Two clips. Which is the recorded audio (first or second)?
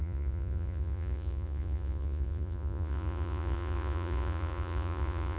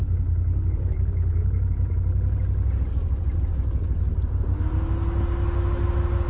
second